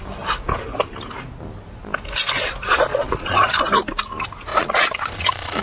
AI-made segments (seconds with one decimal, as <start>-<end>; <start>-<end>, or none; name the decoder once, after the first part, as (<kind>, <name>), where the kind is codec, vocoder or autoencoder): 2.9-3.5 (vocoder, Vocos); 4.5-5.6